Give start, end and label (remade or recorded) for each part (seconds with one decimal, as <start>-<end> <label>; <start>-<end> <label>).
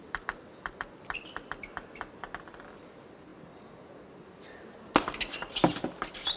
0.0-6.4 recorded